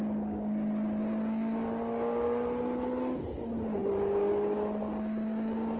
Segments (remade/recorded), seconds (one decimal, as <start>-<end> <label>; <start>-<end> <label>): 0.0-5.8 recorded